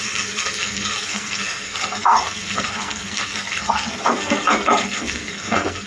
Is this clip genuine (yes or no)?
no